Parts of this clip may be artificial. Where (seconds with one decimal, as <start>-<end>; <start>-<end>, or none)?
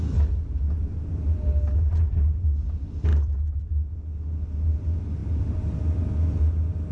3.1-3.6